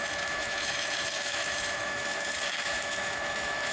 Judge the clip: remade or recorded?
remade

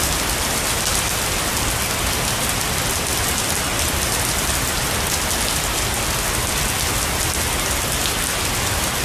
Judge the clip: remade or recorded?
recorded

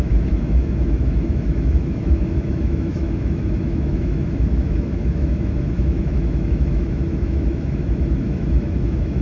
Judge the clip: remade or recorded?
remade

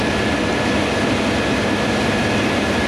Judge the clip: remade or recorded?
recorded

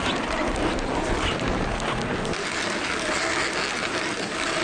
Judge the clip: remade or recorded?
recorded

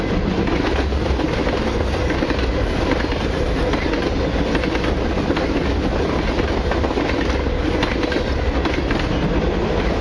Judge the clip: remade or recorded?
recorded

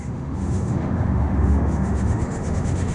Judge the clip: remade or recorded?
remade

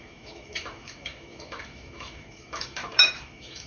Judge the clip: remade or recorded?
remade